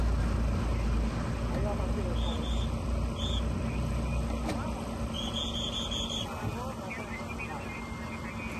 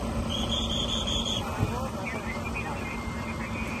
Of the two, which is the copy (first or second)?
second